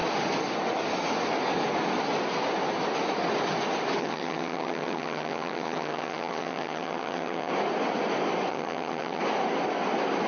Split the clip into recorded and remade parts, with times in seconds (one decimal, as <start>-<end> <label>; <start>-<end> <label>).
0.0-4.0 recorded; 4.0-7.5 remade; 7.5-8.5 recorded; 8.5-9.2 remade; 9.2-10.3 recorded